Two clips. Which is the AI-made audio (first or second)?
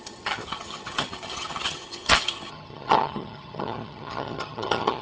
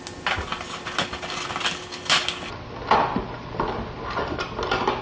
first